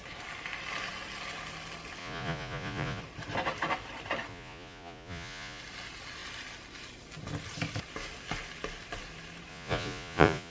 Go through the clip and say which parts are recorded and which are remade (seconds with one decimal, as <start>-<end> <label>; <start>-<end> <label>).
0.0-2.0 recorded; 2.0-3.0 remade; 3.0-4.3 recorded; 4.3-5.6 remade; 5.6-9.5 recorded; 9.5-10.5 remade